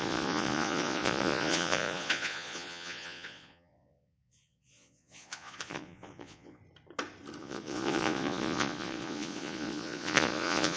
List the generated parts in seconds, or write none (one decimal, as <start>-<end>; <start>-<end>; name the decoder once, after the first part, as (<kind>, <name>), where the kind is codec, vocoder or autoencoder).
0.0-6.6 (vocoder, Vocos); 7.4-10.8